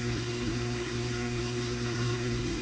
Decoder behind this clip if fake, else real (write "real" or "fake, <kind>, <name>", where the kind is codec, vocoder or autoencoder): fake, codec, SNAC